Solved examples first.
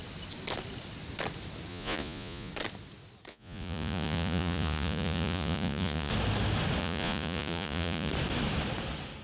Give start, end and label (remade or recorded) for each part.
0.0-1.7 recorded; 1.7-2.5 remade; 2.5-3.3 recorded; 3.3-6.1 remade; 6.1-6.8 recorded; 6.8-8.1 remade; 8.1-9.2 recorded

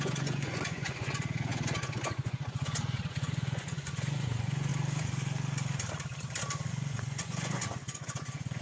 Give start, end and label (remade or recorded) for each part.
0.0-4.7 remade; 4.7-6.7 recorded; 6.7-8.6 remade